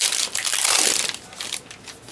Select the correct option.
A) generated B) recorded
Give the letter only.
B